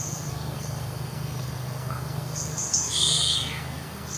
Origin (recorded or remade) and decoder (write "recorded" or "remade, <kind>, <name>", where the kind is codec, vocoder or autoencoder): remade, codec, SNAC